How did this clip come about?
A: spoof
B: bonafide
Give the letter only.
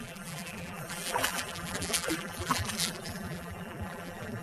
A